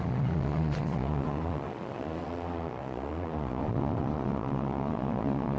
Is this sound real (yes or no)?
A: no